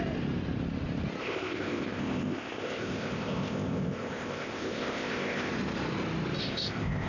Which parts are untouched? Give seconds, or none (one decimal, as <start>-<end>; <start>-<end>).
0.0-1.2; 5.5-6.4